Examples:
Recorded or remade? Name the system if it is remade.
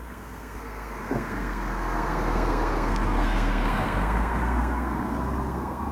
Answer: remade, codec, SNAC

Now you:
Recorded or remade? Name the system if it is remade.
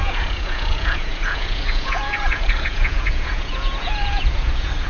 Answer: remade, vocoder, Vocos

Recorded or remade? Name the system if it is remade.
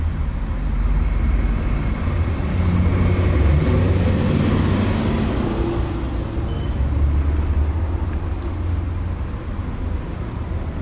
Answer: recorded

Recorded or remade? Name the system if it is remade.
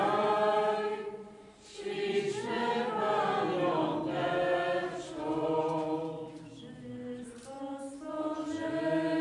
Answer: recorded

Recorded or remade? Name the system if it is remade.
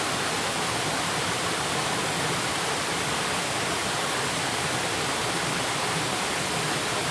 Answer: recorded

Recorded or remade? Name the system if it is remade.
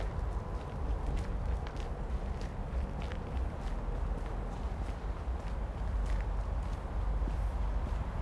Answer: recorded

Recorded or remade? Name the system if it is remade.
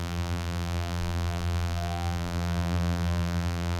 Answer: remade, vocoder, BigVGAN v2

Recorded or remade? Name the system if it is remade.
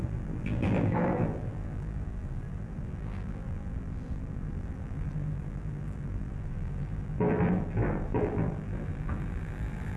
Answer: remade, vocoder, BigVGAN v2